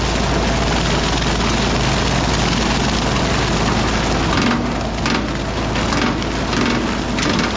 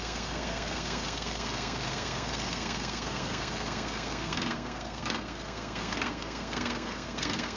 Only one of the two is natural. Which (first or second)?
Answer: first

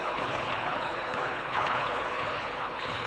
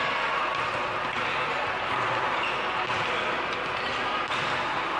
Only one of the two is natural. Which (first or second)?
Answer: second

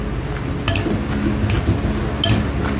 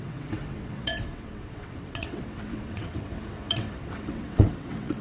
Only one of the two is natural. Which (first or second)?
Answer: first